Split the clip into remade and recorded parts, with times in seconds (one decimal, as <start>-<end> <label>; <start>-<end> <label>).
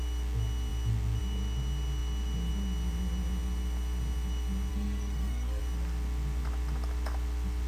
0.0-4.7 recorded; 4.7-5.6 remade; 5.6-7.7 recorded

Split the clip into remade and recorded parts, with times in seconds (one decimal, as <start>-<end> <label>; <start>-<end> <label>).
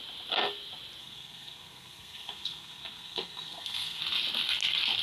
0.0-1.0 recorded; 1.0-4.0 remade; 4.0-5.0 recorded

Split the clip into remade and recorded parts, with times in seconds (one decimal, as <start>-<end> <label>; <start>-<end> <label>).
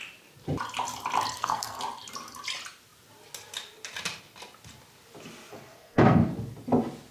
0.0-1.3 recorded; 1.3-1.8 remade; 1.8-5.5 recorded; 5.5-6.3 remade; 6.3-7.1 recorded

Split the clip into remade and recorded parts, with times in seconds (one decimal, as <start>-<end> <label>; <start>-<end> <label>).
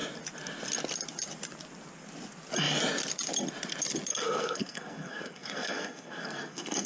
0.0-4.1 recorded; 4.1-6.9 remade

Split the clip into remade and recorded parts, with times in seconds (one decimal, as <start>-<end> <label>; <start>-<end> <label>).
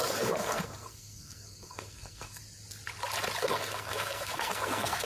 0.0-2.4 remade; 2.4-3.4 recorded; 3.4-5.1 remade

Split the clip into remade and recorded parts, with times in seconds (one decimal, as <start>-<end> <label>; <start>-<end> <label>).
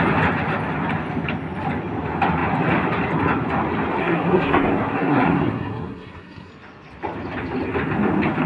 0.0-4.0 recorded; 4.0-6.5 remade; 6.5-8.5 recorded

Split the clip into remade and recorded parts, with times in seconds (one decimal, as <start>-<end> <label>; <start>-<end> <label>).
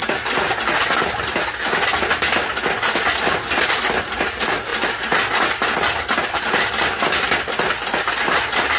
0.0-8.8 recorded